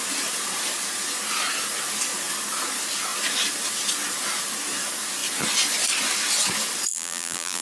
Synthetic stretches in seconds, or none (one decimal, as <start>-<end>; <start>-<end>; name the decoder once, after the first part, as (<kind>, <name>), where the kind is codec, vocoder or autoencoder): 6.9-7.6 (vocoder, BigVGAN v2)